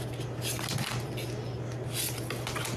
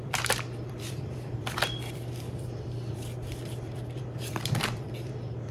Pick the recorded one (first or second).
first